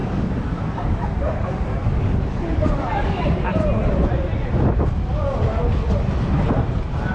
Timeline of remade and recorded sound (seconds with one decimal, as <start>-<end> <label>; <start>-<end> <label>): 0.0-3.5 remade; 3.5-7.1 recorded

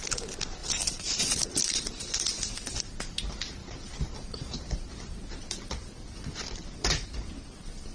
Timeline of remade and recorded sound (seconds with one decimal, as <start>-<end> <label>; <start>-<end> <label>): 0.0-0.6 recorded; 0.6-2.3 remade; 2.3-3.6 recorded; 3.6-4.9 remade; 4.9-7.9 recorded

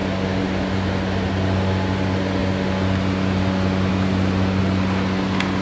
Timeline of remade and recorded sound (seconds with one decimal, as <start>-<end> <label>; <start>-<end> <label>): 0.0-5.6 recorded

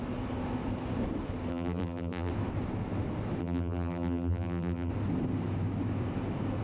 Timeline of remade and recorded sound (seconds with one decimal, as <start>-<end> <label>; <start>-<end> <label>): 0.0-1.5 recorded; 1.5-2.3 remade; 2.3-3.4 recorded; 3.4-4.9 remade; 4.9-6.6 recorded